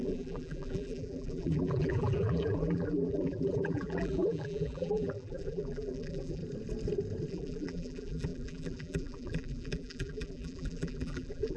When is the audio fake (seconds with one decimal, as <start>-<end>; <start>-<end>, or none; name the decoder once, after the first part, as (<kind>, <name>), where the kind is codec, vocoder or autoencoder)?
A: 0.0-6.4 (vocoder, BigVGAN v2); 7.3-11.6